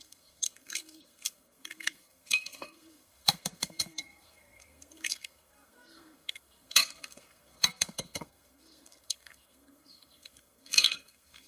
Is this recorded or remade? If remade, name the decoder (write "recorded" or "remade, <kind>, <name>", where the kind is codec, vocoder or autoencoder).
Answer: remade, codec, SNAC